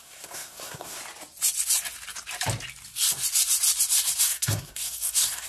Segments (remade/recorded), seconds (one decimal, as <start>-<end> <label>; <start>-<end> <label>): 0.0-1.0 remade; 1.0-4.2 recorded; 4.2-5.5 remade